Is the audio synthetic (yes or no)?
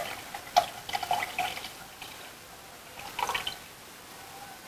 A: no